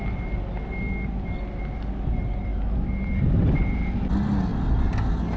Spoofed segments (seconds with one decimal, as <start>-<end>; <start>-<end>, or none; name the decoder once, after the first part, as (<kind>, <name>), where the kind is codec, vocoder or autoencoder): none